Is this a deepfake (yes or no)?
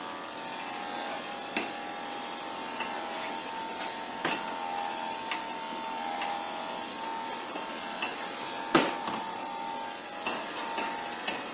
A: no